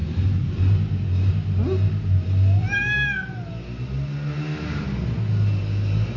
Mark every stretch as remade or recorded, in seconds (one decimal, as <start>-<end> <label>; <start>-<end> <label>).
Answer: 0.0-6.2 recorded

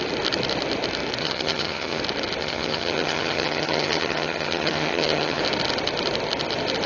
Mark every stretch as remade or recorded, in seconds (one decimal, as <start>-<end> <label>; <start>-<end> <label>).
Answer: 0.0-1.2 recorded; 1.2-2.0 remade; 2.0-2.4 recorded; 2.4-5.4 remade; 5.4-6.9 recorded

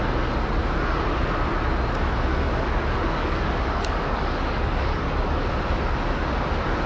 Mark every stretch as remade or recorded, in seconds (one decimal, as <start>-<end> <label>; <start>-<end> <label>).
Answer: 0.0-2.3 recorded; 2.3-5.5 remade; 5.5-6.9 recorded

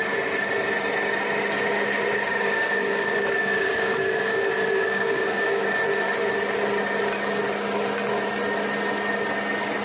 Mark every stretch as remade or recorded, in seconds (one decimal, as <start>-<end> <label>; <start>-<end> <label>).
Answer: 0.0-2.3 recorded; 2.3-5.7 remade; 5.7-9.8 recorded